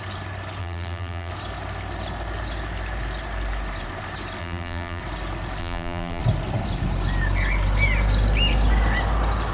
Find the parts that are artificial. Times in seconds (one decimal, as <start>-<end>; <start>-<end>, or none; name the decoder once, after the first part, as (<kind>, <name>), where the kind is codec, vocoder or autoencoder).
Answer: 0.6-1.3 (vocoder, BigVGAN v2); 4.4-5.0; 5.6-6.2